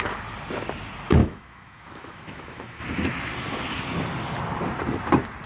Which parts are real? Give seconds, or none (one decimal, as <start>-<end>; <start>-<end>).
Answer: 0.0-1.2; 2.8-5.5